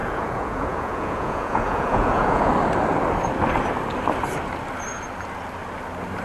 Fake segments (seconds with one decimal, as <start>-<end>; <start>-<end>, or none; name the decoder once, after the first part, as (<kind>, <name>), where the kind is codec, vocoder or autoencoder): 0.0-2.5 (vocoder, Vocos)